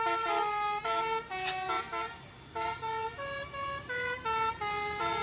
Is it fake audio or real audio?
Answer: real